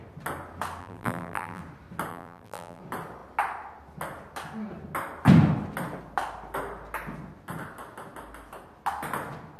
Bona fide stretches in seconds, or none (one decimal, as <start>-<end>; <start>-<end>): 0.0-0.8; 1.6-2.1; 2.8-9.6